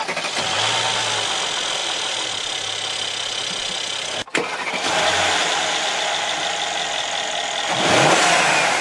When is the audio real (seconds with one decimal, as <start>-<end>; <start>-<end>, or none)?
0.0-1.8; 2.3-8.8